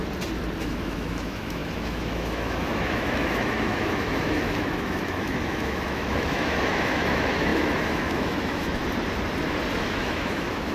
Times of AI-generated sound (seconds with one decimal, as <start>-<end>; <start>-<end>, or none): 0.6-8.8; 9.8-10.7